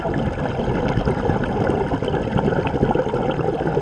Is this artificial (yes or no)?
no